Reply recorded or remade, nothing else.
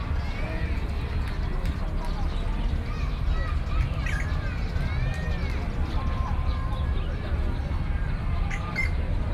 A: recorded